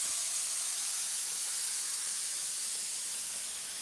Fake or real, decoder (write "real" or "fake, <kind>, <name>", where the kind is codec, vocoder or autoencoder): fake, autoencoder, DAC-VAE